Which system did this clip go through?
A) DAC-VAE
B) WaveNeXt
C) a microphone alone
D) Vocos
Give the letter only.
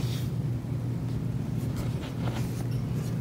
C